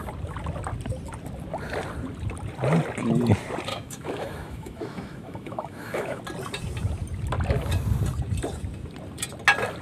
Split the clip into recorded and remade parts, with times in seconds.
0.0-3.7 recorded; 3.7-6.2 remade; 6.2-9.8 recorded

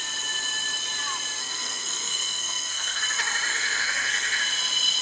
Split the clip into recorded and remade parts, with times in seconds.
0.0-1.4 recorded; 1.4-3.0 remade; 3.0-3.5 recorded; 3.5-4.4 remade; 4.4-5.0 recorded